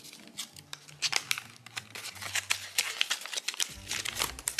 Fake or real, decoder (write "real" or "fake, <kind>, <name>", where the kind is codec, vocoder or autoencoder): real